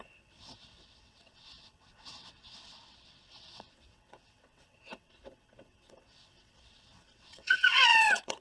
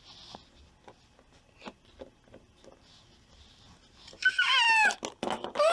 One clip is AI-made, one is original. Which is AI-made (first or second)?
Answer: first